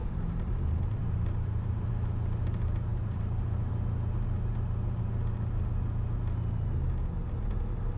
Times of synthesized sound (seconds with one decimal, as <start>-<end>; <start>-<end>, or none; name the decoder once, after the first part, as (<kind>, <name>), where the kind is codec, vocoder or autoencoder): 0.0-1.9 (vocoder, BigVGAN v2); 2.9-3.7